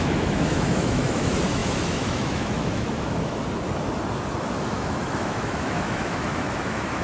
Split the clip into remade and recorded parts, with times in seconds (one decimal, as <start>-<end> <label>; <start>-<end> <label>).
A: 0.0-3.4 remade; 3.4-4.4 recorded; 4.4-7.0 remade

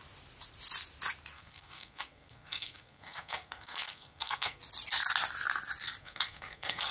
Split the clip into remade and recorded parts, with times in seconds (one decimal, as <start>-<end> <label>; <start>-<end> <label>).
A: 0.0-1.3 recorded; 1.3-4.6 remade; 4.6-6.0 recorded; 6.0-6.9 remade

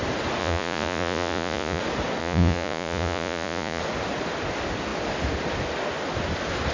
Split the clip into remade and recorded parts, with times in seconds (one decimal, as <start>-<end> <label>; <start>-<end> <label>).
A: 0.0-0.4 recorded; 0.4-1.8 remade; 1.8-2.2 recorded; 2.2-3.8 remade; 3.8-6.7 recorded

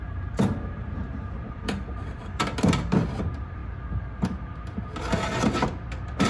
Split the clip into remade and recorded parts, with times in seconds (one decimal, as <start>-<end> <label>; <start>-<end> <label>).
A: 0.0-2.4 remade; 2.4-3.1 recorded; 3.1-3.6 remade; 3.6-6.3 recorded